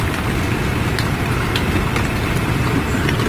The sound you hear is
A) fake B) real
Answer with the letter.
B